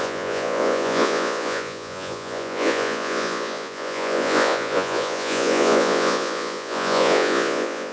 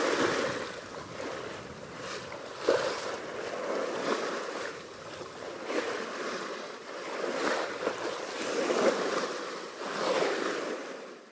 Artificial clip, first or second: first